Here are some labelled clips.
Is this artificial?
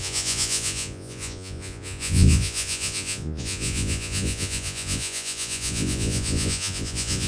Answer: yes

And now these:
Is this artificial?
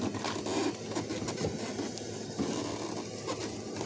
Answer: no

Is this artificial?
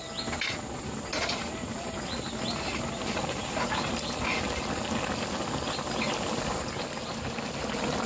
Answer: no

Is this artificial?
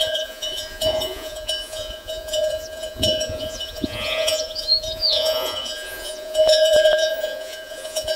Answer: yes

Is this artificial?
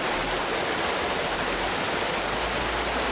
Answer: no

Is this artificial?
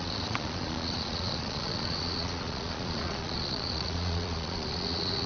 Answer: yes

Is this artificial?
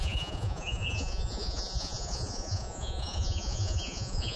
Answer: yes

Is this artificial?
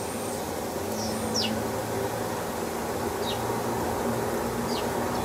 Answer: no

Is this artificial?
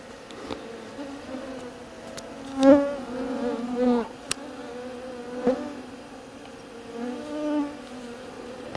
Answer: no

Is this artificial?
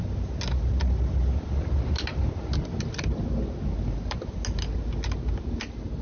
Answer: no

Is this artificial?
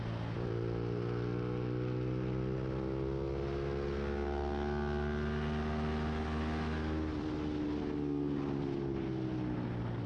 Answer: no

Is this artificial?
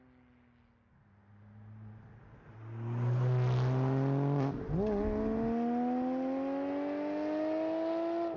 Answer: no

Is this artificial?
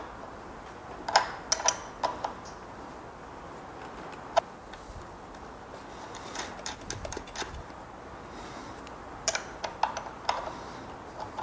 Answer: no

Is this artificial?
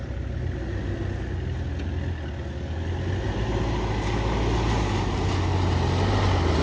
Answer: no